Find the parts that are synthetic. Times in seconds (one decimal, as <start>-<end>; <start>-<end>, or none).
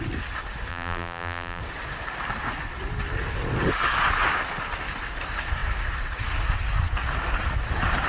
0.7-1.6